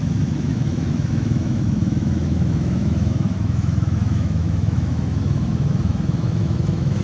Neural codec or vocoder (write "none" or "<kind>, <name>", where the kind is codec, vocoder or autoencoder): autoencoder, DAC-VAE